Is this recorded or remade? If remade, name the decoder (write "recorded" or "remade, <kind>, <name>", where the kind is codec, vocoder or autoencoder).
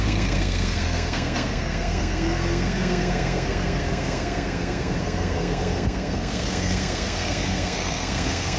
remade, codec, SNAC